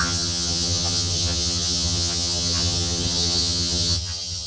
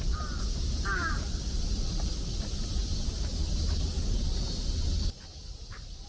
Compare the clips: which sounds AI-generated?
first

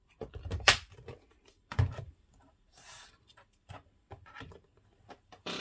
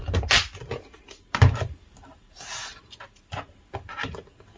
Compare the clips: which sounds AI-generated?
first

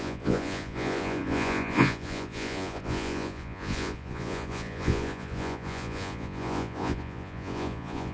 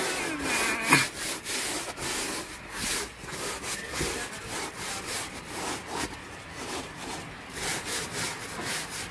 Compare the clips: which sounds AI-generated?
first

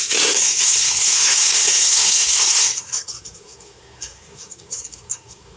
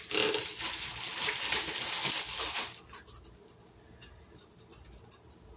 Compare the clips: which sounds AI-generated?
first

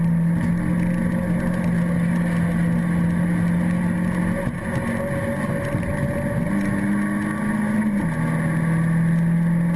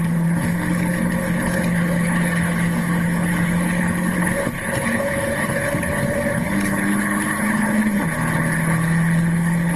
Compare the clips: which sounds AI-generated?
second